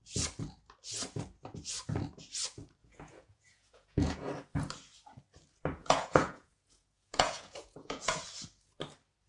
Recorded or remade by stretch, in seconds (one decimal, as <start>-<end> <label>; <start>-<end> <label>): 0.0-2.8 recorded; 2.8-4.3 remade; 4.3-5.8 recorded; 5.8-8.2 remade; 8.2-9.3 recorded